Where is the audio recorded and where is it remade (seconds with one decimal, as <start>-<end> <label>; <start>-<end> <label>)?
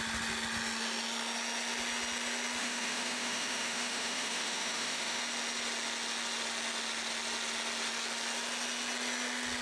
0.0-2.6 recorded; 2.6-5.2 remade; 5.2-9.6 recorded